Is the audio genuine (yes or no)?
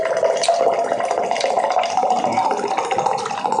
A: yes